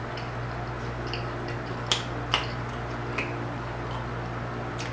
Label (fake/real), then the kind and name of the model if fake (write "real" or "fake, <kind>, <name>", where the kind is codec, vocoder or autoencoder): real